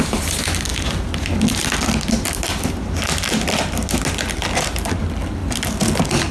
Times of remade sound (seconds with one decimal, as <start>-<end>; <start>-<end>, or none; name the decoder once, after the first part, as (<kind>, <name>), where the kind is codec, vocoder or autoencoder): 0.0-0.7 (vocoder, BigVGAN v2); 2.1-2.5; 5.0-5.4